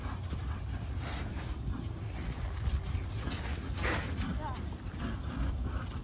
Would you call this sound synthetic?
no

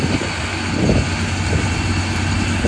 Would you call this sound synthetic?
no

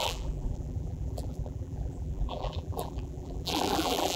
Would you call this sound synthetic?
yes